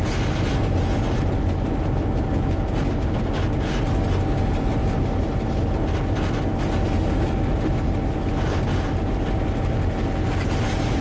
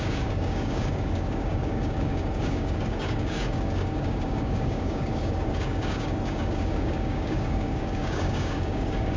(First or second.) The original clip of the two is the first